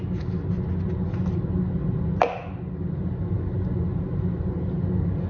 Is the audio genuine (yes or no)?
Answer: yes